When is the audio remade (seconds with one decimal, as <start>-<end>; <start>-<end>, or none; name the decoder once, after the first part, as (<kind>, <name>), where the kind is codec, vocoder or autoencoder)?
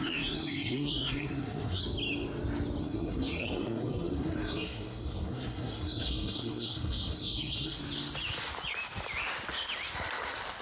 0.0-1.8 (codec, SNAC); 2.8-7.8